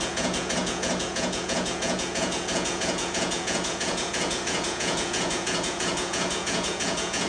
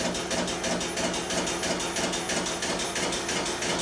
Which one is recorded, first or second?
second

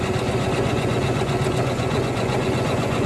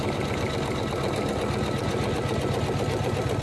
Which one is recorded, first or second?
second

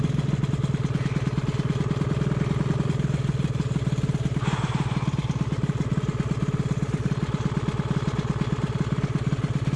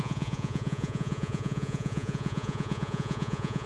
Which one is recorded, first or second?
first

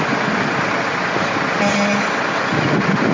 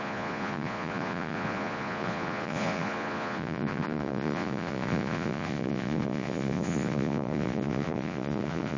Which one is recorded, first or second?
first